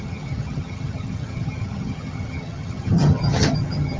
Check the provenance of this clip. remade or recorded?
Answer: remade